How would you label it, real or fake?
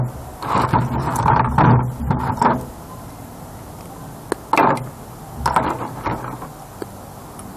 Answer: real